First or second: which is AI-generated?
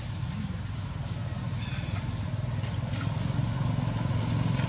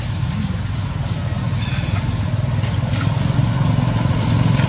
second